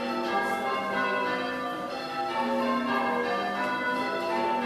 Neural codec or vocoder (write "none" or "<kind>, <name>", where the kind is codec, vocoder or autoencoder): none